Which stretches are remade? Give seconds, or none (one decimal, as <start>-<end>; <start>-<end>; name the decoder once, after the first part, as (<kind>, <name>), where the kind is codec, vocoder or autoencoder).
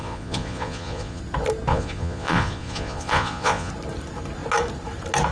0.0-1.2 (vocoder, Vocos); 1.7-3.7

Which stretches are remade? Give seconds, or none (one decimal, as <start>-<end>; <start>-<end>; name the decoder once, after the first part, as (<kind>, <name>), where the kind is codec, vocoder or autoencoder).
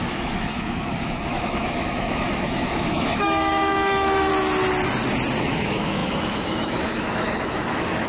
0.0-4.3 (autoencoder, DAC-VAE); 5.4-8.1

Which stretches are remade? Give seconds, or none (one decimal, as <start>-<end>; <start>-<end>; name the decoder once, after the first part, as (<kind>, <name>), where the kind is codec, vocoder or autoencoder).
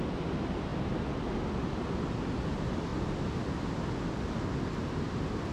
none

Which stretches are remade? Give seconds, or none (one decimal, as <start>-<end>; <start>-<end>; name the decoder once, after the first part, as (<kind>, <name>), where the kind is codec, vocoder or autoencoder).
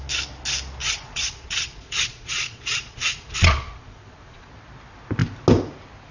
0.8-4.5 (vocoder, Vocos)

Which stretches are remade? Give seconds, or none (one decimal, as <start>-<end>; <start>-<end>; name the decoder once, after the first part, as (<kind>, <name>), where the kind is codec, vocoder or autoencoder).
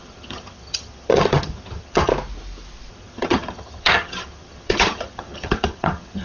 0.0-2.1 (vocoder, HiFi-GAN); 2.9-6.2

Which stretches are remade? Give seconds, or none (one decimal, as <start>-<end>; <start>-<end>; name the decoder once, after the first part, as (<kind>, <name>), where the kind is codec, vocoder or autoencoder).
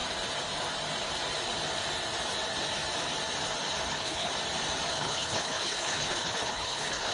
3.9-4.3 (codec, HILCodec); 4.9-7.1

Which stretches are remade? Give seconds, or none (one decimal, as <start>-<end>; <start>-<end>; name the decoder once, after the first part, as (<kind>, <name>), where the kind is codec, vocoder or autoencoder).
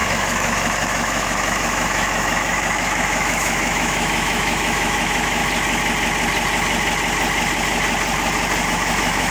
0.0-5.4 (autoencoder, DAC-VAE); 8.7-9.3